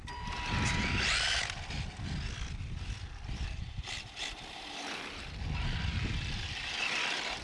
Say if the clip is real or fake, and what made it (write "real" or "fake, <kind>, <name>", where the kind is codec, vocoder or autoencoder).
real